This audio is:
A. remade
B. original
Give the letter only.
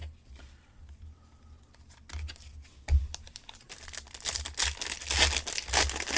B